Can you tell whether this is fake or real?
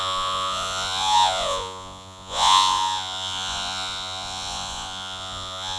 fake